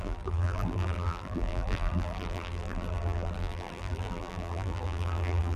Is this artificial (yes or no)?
yes